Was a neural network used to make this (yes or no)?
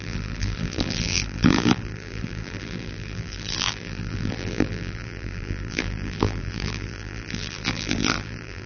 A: yes